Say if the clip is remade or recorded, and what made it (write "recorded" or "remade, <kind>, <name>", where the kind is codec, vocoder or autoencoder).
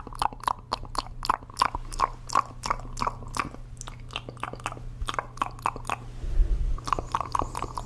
recorded